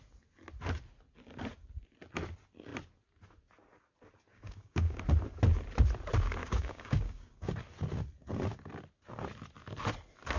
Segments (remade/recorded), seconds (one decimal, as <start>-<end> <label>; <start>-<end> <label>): 0.0-4.3 recorded; 4.3-5.0 remade; 5.0-6.4 recorded; 6.4-7.5 remade; 7.5-10.4 recorded